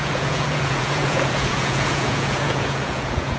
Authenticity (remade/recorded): remade